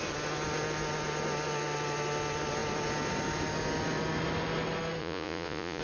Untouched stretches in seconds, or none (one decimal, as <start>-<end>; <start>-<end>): 0.0-5.0